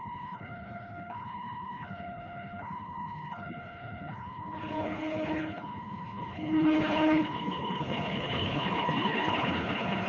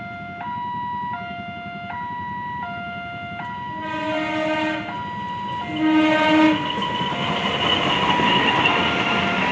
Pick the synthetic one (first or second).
first